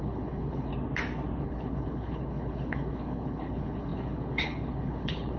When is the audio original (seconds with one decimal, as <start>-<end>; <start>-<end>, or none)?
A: 0.7-1.4